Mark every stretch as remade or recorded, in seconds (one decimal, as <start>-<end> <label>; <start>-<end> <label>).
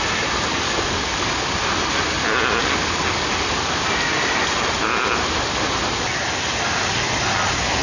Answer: 0.0-0.5 recorded; 0.5-1.5 remade; 1.5-7.8 recorded